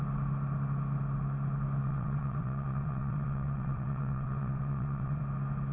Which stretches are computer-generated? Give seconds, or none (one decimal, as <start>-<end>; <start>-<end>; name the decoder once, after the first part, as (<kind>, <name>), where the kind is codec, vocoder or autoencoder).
1.8-5.2 (vocoder, WaveNeXt)